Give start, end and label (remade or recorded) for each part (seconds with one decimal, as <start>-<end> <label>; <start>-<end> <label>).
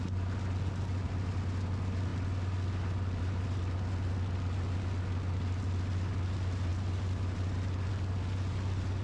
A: 0.0-9.0 recorded